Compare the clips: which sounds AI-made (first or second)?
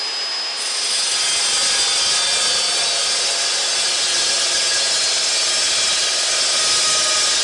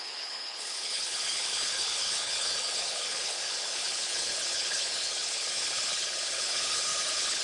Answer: second